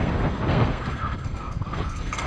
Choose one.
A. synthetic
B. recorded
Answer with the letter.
A